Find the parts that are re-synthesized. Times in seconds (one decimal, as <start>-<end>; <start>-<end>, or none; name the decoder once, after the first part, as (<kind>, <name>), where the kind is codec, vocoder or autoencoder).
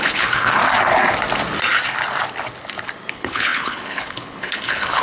0.0-0.6 (codec, HILCodec); 3.1-5.0